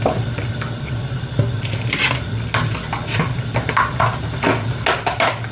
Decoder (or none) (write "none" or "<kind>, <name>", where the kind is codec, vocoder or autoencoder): none